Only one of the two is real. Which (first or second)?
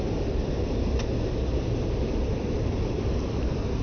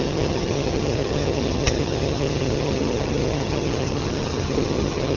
first